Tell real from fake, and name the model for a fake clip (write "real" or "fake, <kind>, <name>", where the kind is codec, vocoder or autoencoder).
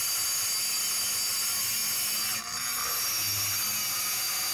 real